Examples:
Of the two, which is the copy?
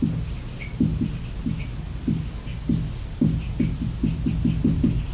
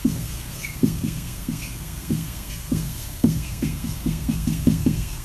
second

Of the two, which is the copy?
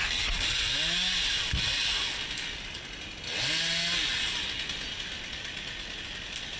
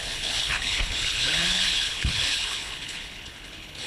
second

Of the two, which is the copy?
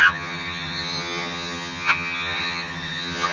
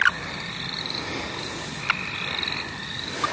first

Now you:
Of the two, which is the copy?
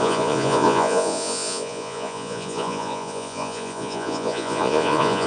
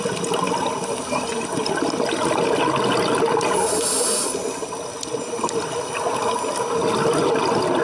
first